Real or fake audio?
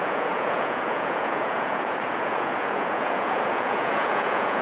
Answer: fake